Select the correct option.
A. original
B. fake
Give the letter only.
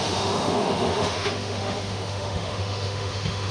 B